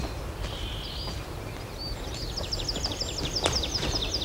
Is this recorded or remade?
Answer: recorded